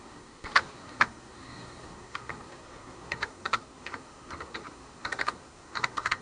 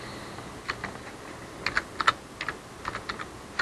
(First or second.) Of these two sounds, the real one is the second